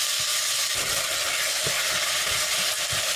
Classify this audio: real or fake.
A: real